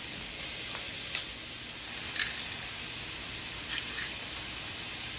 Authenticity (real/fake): real